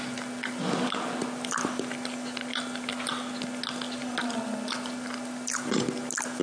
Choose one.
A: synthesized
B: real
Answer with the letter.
B